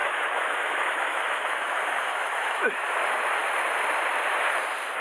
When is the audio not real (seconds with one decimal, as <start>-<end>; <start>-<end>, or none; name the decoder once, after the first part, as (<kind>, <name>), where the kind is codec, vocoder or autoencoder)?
0.0-3.0 (autoencoder, DAC-VAE)